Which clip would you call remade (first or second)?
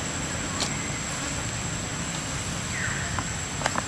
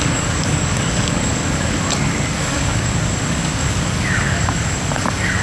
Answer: second